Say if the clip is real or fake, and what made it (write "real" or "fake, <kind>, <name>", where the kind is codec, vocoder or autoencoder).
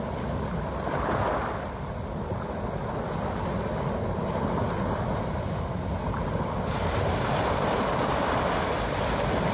real